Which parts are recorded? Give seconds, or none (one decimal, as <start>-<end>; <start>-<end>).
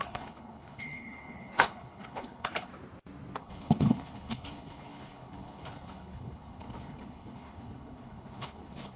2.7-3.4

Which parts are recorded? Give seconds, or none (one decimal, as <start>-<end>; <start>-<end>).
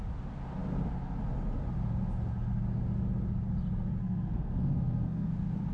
0.0-4.0; 5.3-5.7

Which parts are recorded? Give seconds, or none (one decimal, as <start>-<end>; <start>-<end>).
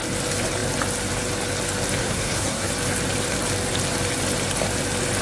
0.0-2.0; 2.7-5.2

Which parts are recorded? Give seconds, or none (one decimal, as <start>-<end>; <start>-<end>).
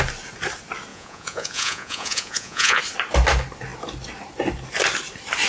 0.0-0.9; 2.8-5.5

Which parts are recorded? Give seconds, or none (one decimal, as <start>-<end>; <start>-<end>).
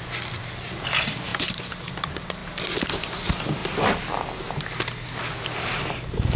0.0-6.4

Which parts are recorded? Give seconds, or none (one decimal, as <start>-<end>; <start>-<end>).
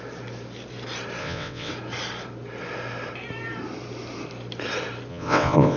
0.0-1.2; 1.7-5.1